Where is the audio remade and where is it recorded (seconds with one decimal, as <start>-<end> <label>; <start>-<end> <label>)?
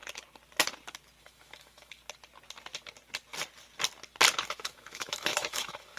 0.0-1.2 recorded; 1.2-2.0 remade; 2.0-4.5 recorded; 4.5-6.0 remade